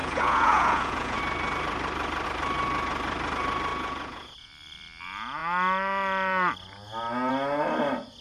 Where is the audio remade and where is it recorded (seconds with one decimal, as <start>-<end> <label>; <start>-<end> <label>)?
0.0-1.2 remade; 1.2-3.7 recorded; 3.7-4.5 remade; 4.5-8.2 recorded